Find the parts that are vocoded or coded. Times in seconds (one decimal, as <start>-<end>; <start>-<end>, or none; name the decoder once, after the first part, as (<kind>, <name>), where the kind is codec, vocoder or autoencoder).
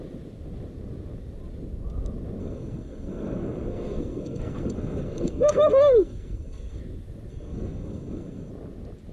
2.4-6.8 (codec, SNAC); 7.3-8.5